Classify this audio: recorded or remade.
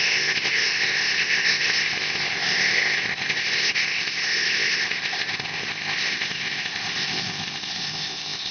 remade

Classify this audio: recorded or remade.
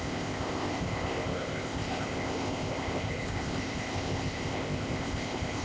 remade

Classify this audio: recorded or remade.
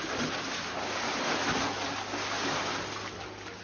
recorded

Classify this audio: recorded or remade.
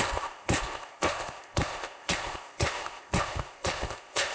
remade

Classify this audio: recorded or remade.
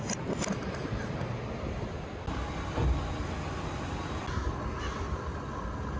recorded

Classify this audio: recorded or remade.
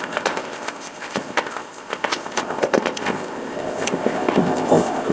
remade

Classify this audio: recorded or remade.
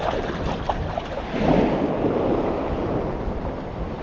recorded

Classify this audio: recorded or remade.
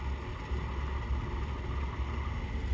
recorded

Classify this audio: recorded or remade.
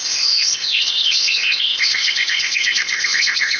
remade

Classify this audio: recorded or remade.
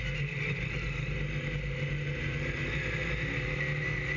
recorded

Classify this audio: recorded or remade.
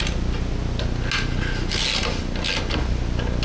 recorded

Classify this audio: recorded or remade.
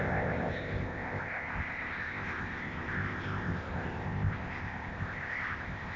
remade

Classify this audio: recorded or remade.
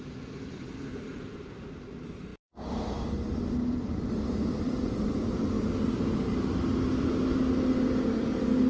recorded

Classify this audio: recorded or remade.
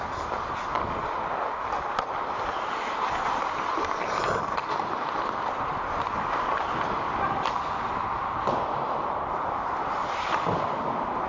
recorded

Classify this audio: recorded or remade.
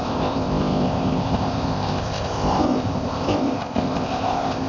remade